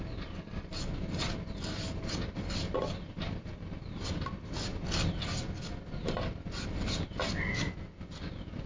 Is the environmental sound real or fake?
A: real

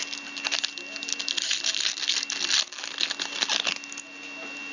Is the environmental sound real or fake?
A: real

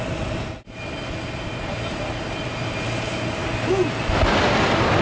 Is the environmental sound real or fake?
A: real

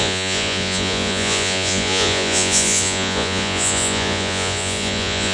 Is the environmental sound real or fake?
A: fake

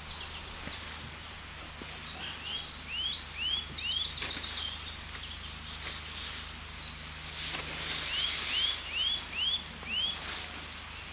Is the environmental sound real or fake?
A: real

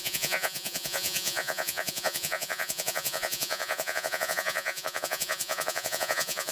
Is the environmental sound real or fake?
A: fake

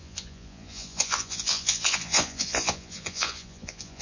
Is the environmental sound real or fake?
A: fake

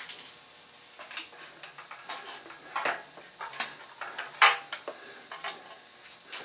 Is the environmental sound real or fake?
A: real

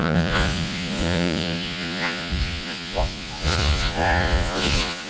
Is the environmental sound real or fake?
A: fake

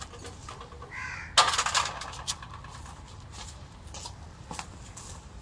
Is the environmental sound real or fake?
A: real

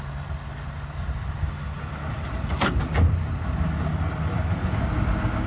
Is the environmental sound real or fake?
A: real